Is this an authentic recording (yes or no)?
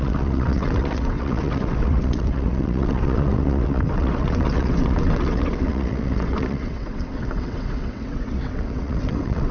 no